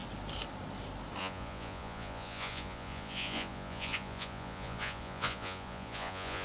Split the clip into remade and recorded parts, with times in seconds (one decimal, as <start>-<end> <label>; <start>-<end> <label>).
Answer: 0.0-1.2 recorded; 1.2-6.4 remade